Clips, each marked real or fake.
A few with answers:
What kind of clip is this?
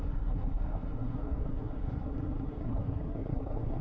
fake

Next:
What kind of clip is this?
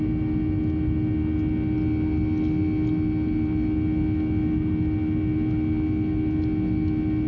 real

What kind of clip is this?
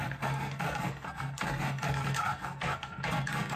fake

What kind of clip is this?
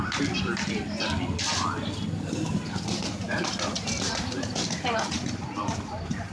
fake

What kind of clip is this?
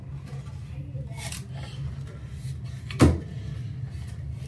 real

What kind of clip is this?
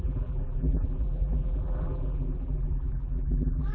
fake